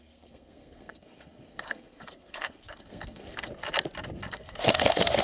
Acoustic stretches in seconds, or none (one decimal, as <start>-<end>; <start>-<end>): 3.5-4.3